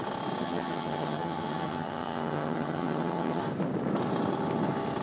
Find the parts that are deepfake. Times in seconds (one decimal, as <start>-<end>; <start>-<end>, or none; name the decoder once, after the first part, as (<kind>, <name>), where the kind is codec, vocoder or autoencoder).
0.4-3.4 (vocoder, HiFi-GAN)